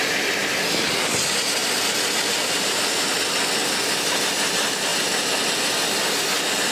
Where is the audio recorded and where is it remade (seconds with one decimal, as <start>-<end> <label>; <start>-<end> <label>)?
0.0-6.7 recorded